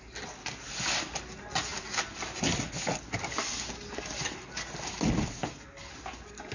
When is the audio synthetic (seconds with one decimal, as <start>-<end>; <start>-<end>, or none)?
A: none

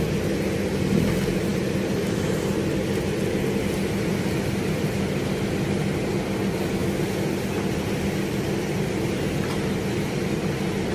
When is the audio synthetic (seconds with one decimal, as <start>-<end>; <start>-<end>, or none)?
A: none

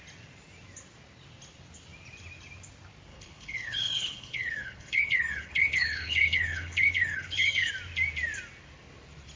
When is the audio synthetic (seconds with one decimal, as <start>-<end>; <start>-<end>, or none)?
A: 3.1-7.7